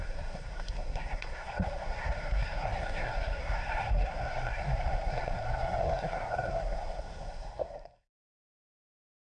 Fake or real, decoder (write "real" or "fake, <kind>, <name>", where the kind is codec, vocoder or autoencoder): fake, codec, SNAC